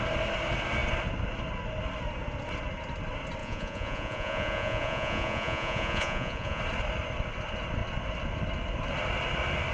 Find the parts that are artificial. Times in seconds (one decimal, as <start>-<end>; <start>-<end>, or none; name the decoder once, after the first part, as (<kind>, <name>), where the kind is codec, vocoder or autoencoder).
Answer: 3.4-6.6 (vocoder, Vocos)